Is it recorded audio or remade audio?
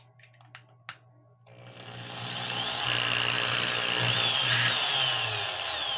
recorded